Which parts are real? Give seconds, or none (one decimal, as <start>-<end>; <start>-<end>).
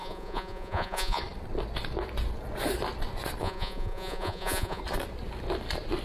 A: 1.2-3.4; 4.8-6.0